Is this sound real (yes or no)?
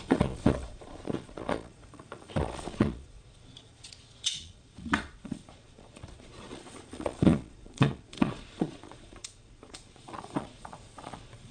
no